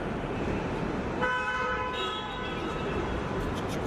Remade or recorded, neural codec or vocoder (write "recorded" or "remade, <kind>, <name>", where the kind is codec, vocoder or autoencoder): remade, vocoder, BigVGAN v2